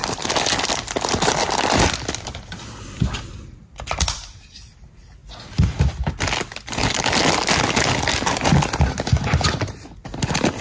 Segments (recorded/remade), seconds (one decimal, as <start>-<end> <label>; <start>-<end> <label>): 0.0-10.6 recorded